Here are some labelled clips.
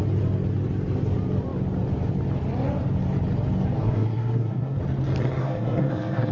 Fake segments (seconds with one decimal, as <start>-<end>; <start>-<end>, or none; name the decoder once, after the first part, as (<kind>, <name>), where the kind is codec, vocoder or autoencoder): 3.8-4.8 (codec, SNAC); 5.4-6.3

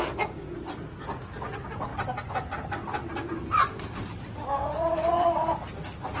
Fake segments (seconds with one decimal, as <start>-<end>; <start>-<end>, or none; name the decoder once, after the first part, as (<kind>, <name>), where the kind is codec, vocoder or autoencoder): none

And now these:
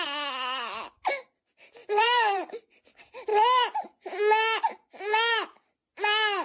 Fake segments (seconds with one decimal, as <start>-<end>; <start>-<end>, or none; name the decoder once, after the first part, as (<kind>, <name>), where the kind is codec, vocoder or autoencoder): 1.8-2.9 (vocoder, BigVGAN v2)

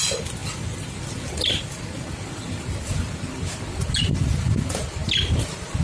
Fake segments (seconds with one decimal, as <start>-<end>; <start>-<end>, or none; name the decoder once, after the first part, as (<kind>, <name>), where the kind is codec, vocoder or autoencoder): none

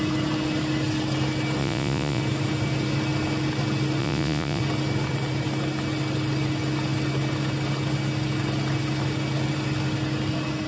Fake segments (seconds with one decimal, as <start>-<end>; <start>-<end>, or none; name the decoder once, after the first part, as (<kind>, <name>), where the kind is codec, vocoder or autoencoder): 1.6-2.2 (vocoder, Vocos); 4.0-4.6

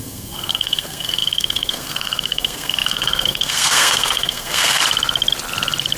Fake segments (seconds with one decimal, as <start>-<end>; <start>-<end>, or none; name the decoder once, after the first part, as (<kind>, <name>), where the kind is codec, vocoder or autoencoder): 0.0-4.8 (codec, SNAC)

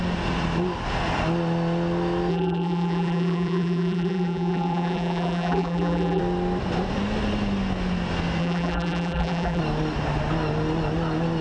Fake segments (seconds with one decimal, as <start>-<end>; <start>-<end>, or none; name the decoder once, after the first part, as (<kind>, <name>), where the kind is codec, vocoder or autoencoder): 2.3-6.2 (vocoder, BigVGAN v2); 8.4-9.6

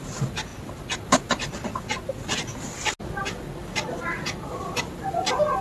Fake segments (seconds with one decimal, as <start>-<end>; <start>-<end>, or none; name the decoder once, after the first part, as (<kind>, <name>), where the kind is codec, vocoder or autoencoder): 3.0-5.0 (vocoder, BigVGAN v2)